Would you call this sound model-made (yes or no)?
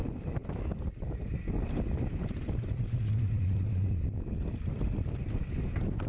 no